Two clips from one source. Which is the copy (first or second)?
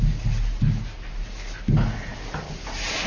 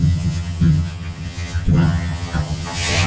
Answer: second